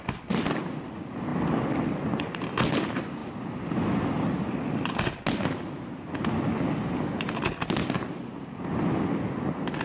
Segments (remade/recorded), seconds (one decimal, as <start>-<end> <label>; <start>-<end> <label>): 0.0-9.8 recorded